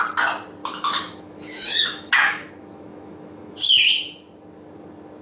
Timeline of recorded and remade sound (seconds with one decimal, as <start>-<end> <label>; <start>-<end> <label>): 0.0-0.6 recorded; 0.6-3.7 remade; 3.7-5.2 recorded